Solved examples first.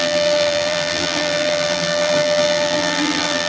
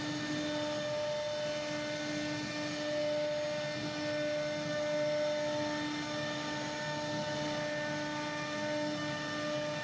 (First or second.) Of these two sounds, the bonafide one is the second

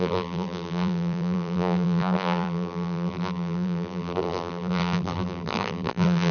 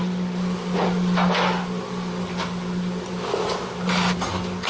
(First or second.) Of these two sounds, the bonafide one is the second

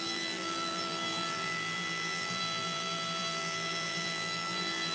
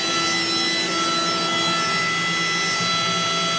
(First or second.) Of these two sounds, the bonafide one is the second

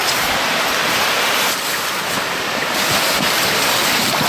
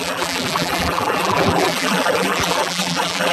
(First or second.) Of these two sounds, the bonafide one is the first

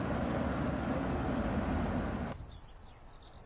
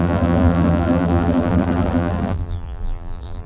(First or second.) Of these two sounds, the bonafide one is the first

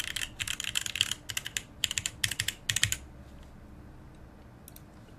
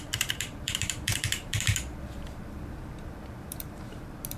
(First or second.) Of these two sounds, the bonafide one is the first